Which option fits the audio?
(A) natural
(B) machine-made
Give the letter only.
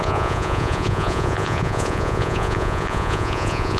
B